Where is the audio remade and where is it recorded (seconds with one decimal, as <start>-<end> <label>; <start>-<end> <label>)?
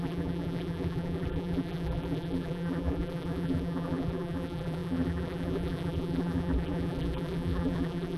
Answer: 0.0-8.2 remade